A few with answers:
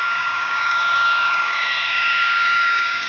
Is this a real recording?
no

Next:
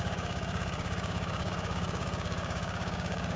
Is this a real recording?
no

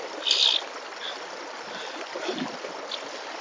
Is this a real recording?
yes